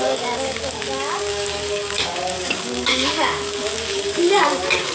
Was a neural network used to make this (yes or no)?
yes